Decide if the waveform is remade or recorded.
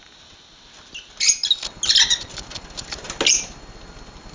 recorded